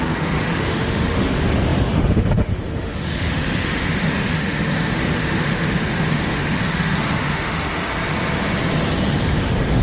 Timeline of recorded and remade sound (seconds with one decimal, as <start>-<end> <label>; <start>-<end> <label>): 0.0-7.9 remade; 7.9-9.3 recorded; 9.3-9.8 remade

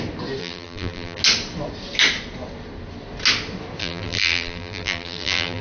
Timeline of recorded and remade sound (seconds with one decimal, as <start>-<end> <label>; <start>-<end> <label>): 0.0-0.4 recorded; 0.4-1.2 remade; 1.2-3.8 recorded; 3.8-5.6 remade

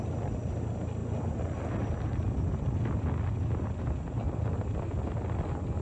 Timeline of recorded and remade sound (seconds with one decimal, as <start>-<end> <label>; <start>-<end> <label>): 0.0-5.8 recorded